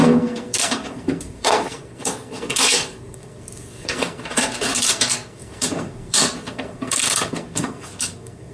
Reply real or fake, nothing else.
fake